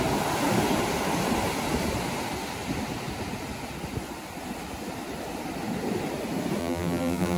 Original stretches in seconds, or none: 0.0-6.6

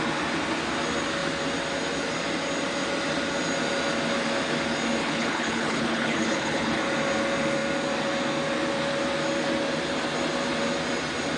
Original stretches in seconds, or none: 0.0-5.0; 6.8-11.4

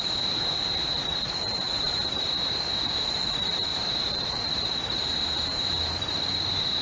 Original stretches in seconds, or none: none

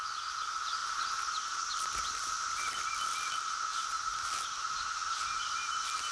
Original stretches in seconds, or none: 0.0-6.1

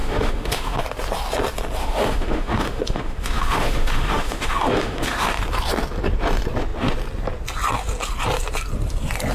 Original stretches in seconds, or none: 0.8-1.8; 5.4-9.3

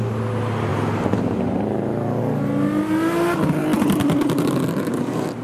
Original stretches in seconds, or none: 0.0-0.7; 2.2-3.6; 4.5-5.4

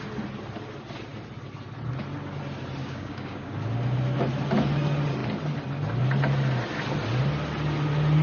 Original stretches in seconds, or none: 0.0-2.8; 3.5-8.2

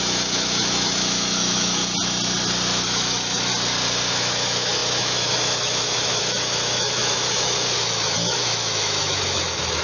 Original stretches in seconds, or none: 1.8-2.8; 3.5-4.1